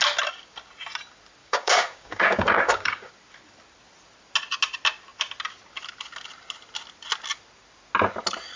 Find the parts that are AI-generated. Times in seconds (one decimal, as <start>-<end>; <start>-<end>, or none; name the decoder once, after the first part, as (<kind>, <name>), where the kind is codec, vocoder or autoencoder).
1.4-3.1 (codec, DAC)

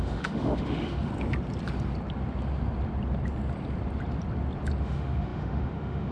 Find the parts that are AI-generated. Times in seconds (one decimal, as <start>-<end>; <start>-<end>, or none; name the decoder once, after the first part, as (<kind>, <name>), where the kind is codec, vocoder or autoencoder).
0.0-1.1 (autoencoder, DAC-VAE); 4.8-6.1